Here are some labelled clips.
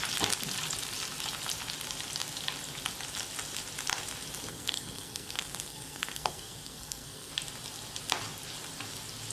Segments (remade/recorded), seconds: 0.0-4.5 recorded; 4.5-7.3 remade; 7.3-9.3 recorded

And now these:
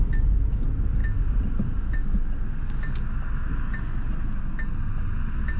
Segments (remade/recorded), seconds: 0.0-5.6 recorded